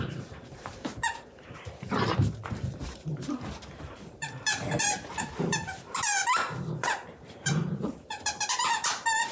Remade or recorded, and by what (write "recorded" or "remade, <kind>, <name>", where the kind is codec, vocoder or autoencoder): remade, vocoder, BigVGAN v2